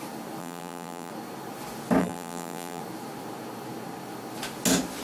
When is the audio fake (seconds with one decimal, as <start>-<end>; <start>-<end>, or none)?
0.4-1.1; 2.0-2.8